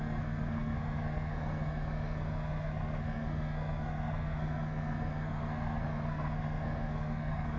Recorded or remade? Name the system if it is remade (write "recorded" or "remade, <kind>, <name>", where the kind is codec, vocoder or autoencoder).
remade, codec, SNAC